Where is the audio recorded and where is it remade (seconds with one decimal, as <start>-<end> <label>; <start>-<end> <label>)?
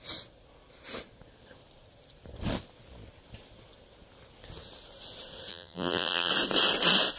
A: 0.0-5.5 recorded; 5.5-6.3 remade; 6.3-7.2 recorded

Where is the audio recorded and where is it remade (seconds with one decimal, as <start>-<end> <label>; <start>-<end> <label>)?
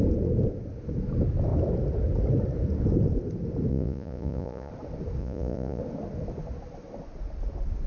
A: 0.0-3.7 recorded; 3.7-4.7 remade; 4.7-5.2 recorded; 5.2-5.8 remade; 5.8-7.9 recorded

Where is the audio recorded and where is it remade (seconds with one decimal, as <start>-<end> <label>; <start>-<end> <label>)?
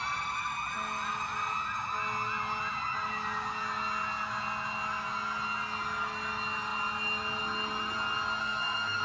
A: 0.0-8.4 recorded; 8.4-9.0 remade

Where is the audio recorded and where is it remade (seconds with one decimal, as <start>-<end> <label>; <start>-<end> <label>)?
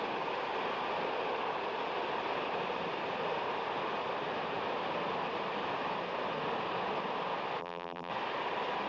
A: 0.0-7.6 recorded; 7.6-8.1 remade; 8.1-8.9 recorded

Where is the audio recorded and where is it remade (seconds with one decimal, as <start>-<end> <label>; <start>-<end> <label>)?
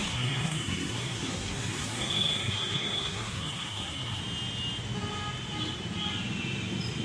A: 0.0-4.2 remade; 4.2-7.0 recorded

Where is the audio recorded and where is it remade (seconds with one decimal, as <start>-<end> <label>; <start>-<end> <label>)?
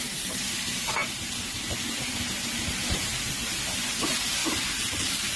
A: 0.0-5.4 remade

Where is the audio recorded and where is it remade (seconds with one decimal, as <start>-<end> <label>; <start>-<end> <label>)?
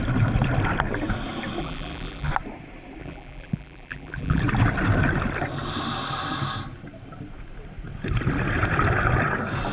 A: 0.0-1.6 recorded; 1.6-2.3 remade; 2.3-3.0 recorded; 3.0-4.4 remade; 4.4-9.7 recorded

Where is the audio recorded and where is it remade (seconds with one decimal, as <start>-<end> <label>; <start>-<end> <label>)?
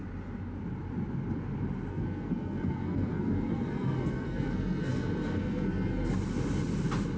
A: 0.0-1.9 recorded; 1.9-6.2 remade; 6.2-7.2 recorded